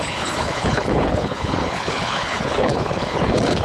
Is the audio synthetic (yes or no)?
yes